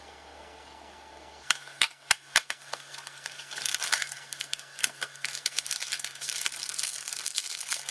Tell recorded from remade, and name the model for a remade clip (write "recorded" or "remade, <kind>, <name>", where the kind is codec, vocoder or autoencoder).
remade, codec, SNAC